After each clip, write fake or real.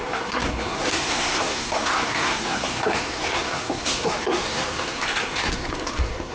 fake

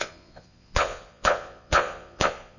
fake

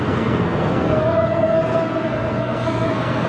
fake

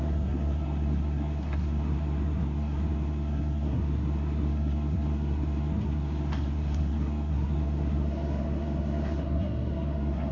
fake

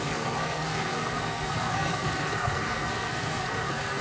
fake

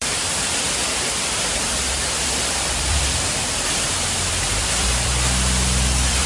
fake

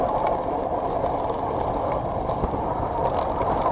real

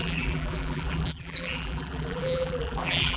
fake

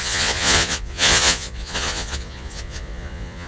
fake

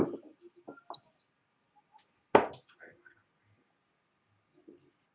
real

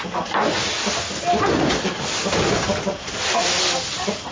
real